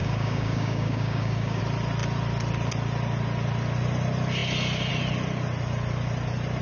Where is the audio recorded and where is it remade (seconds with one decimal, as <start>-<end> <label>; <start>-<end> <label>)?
0.0-1.6 remade; 1.6-6.6 recorded